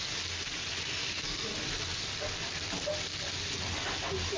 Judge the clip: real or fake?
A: real